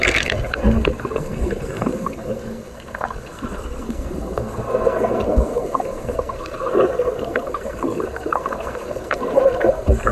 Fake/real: fake